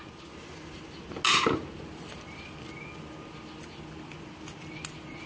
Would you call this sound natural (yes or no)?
yes